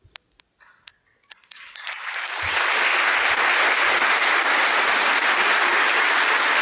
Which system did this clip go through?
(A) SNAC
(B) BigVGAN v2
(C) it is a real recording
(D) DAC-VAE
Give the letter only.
C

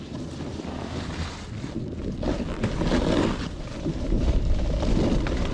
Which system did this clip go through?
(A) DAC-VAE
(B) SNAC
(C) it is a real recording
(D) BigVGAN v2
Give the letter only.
C